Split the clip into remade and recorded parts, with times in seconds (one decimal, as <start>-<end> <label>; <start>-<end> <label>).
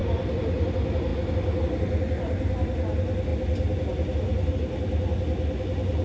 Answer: 0.0-6.0 recorded